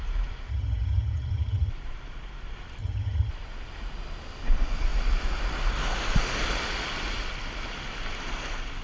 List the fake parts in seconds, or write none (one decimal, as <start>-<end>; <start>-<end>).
0.5-1.7; 2.8-3.3